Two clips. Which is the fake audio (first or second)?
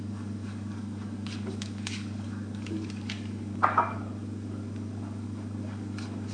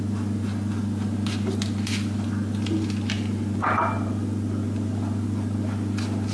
first